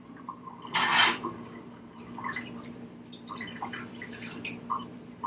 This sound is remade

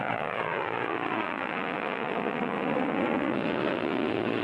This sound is remade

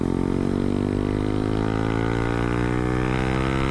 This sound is recorded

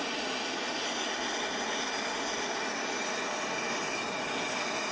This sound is recorded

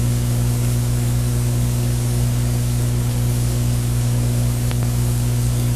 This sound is remade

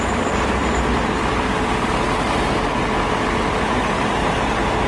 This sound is recorded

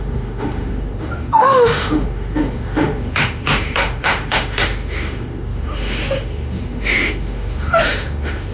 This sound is remade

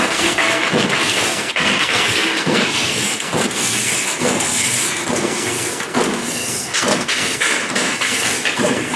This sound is remade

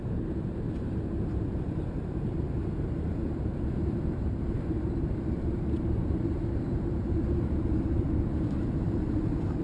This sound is remade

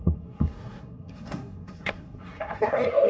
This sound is remade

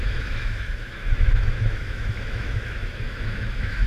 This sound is remade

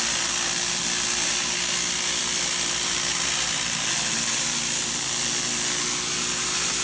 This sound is recorded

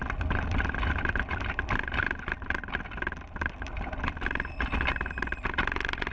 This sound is recorded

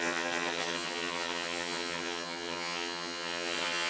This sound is remade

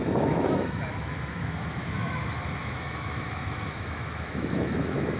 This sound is remade